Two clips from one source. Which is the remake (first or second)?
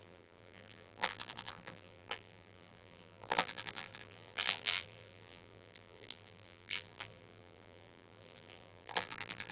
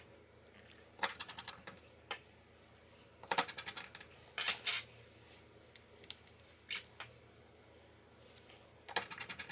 first